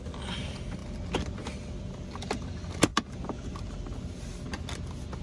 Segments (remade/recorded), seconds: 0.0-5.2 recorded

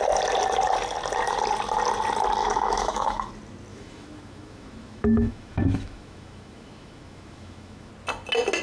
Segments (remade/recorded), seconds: 0.0-2.4 recorded; 2.4-3.3 remade; 3.3-3.7 recorded; 3.7-7.9 remade; 7.9-8.6 recorded

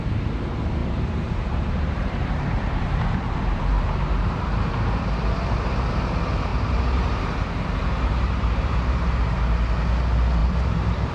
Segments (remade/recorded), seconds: 0.0-0.8 recorded; 0.8-4.7 remade; 4.7-6.5 recorded; 6.5-9.4 remade; 9.4-10.4 recorded; 10.4-11.1 remade

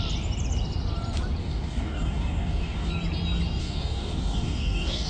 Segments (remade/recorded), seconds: 0.0-1.4 recorded; 1.4-2.9 remade; 2.9-3.6 recorded; 3.6-5.1 remade

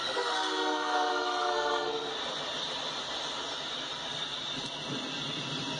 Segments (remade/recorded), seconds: 0.0-2.1 remade; 2.1-5.8 recorded

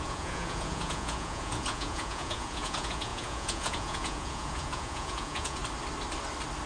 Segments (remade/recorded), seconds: 0.0-5.6 remade; 5.6-6.7 recorded